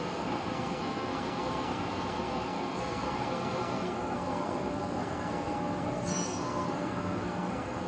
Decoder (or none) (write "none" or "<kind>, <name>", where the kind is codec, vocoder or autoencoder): codec, SNAC